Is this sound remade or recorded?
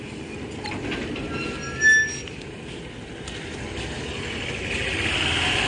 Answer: recorded